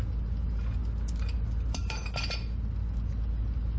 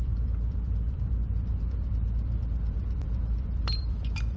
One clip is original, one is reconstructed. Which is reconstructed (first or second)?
second